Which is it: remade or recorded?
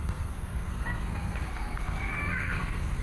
remade